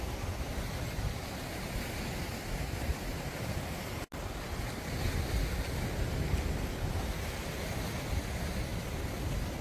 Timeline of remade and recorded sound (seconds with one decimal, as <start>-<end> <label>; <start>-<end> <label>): 0.0-9.6 recorded